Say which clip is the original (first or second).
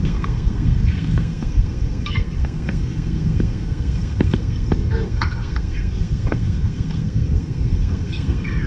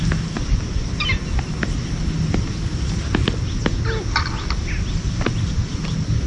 second